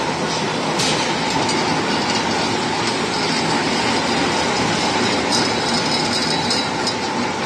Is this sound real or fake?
real